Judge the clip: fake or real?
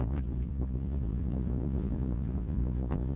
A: fake